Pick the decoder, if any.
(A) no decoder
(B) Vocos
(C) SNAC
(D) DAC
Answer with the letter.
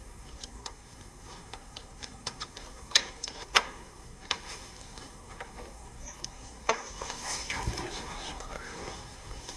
C